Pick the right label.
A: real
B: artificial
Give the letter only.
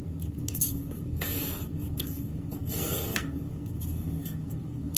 B